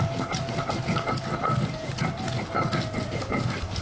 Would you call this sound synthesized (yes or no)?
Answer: no